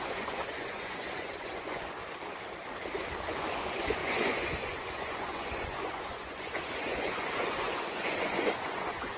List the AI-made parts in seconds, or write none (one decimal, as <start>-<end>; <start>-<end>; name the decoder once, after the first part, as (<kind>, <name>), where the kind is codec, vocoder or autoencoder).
0.0-2.0 (vocoder, Vocos); 3.3-9.2